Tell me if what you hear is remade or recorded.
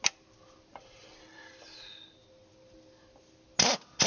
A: recorded